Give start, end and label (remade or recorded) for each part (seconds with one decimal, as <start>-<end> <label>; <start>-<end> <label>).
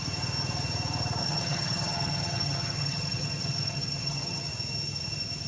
0.0-1.2 recorded; 1.2-4.5 remade; 4.5-5.5 recorded